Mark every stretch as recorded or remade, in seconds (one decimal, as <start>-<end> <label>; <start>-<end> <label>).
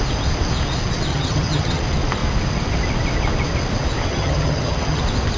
0.0-1.1 recorded; 1.1-1.8 remade; 1.8-4.1 recorded; 4.1-5.0 remade; 5.0-5.4 recorded